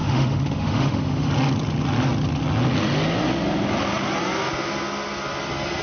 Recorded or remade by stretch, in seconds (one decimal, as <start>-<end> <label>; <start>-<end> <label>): 0.0-1.3 remade; 1.3-5.8 recorded